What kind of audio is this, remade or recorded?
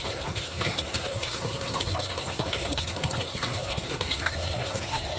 remade